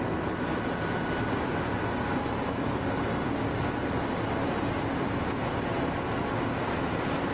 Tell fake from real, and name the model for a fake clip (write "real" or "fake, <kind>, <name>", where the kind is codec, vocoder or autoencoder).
real